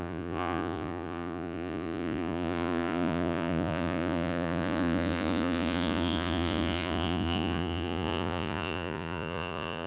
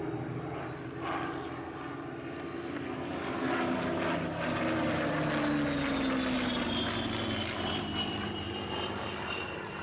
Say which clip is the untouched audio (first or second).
second